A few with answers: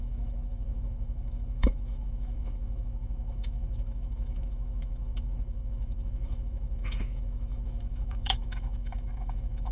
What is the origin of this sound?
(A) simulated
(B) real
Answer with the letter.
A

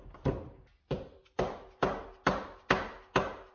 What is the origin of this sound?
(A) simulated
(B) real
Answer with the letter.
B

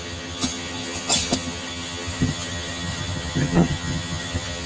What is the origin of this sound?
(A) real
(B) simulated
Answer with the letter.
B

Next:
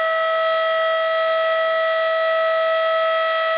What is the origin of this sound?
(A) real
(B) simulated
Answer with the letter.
A